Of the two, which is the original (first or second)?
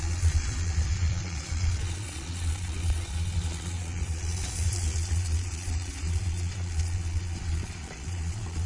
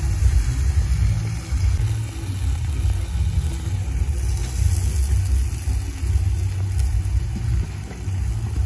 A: second